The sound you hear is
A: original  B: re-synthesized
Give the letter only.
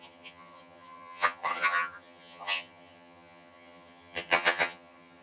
B